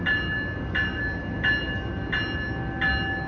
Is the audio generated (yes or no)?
no